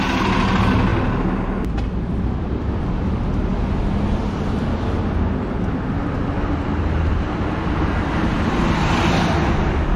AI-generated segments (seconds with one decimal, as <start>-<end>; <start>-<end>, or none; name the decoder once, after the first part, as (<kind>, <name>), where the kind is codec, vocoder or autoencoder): none